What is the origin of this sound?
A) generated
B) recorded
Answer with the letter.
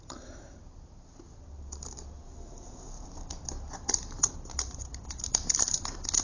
B